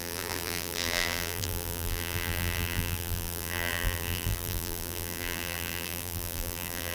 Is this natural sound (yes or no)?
no